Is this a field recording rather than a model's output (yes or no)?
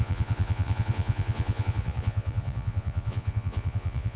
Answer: no